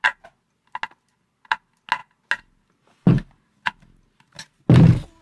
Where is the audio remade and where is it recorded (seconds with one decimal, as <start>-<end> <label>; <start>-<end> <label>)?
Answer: 0.0-5.2 recorded